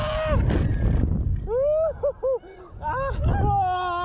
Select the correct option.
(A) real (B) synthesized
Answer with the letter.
A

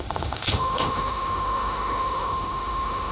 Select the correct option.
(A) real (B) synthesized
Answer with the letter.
B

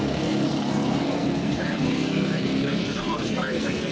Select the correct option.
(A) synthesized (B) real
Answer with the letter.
A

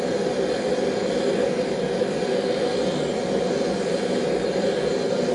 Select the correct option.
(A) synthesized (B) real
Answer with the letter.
B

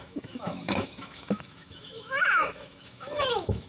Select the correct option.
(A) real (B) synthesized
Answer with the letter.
B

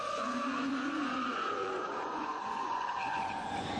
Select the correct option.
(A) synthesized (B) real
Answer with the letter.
A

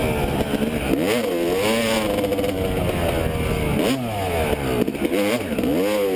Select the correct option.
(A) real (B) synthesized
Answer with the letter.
A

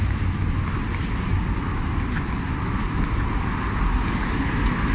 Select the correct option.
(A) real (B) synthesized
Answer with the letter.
A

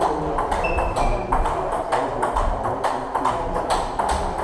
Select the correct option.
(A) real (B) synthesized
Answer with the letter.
A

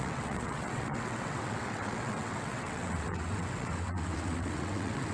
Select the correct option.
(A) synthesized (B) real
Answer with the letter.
A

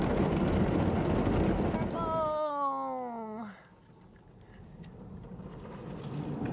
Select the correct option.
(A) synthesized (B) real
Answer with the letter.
B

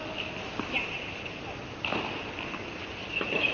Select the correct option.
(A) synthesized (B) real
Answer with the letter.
B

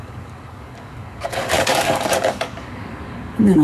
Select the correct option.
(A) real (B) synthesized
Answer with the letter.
B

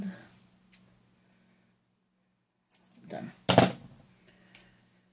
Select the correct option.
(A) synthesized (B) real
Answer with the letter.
B